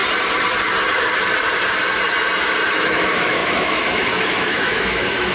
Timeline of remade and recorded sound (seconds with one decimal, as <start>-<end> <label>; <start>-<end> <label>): 0.0-2.7 recorded; 2.7-5.3 remade